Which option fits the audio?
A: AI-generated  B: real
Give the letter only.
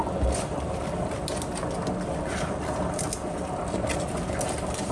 B